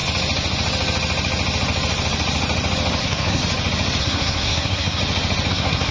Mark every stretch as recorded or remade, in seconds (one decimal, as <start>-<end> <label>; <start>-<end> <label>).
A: 0.0-3.0 recorded; 3.0-3.4 remade; 3.4-4.0 recorded; 4.0-5.0 remade; 5.0-5.5 recorded; 5.5-5.9 remade